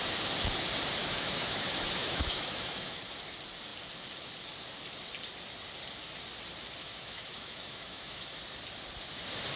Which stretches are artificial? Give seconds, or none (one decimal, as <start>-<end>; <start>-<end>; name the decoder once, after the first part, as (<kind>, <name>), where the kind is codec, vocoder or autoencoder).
1.0-3.0 (autoencoder, DAC-VAE); 6.8-8.4